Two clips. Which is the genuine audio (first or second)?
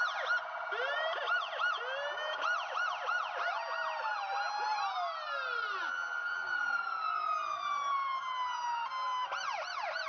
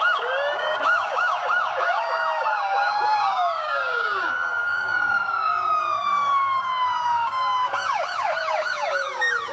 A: first